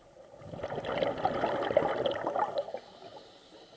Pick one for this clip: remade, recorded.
recorded